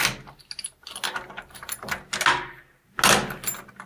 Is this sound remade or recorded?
recorded